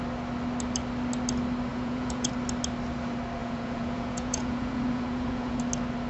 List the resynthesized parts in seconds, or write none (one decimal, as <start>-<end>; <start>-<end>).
1.7-2.3; 3.4-5.6